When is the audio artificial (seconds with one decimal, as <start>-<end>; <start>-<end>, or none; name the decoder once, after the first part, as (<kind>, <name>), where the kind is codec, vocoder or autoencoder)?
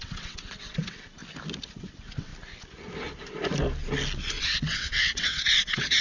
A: 0.0-1.2 (vocoder, WaveNeXt); 1.7-2.3; 4.4-6.0